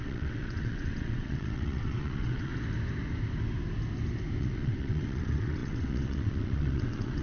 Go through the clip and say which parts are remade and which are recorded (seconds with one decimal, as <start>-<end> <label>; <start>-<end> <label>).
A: 0.0-2.5 remade; 2.5-4.4 recorded; 4.4-7.2 remade